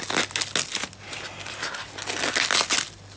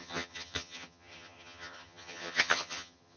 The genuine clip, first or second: first